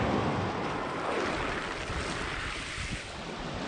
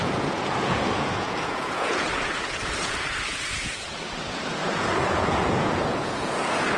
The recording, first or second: first